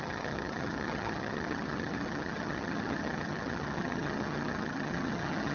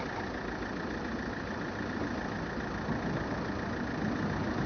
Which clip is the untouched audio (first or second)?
second